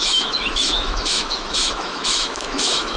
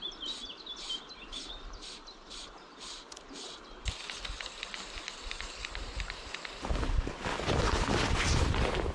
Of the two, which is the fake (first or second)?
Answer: first